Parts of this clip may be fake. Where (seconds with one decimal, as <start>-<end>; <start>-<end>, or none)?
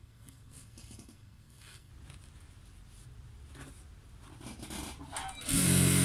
0.0-1.9; 5.5-6.0